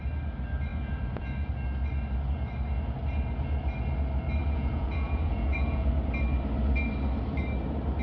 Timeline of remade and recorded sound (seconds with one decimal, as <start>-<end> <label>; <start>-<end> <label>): 0.0-0.7 recorded; 0.7-1.5 remade; 1.5-4.4 recorded; 4.4-5.9 remade; 5.9-8.0 recorded